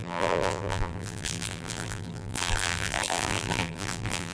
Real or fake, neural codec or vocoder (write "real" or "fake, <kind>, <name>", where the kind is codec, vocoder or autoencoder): fake, vocoder, BigVGAN v2